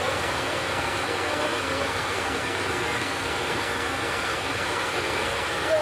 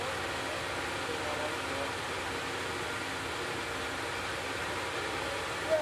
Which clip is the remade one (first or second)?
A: first